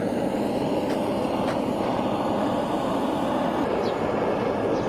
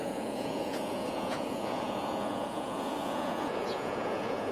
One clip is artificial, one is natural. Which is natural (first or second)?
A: first